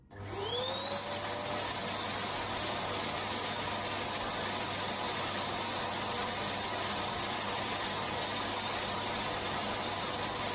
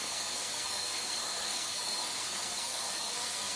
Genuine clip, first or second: first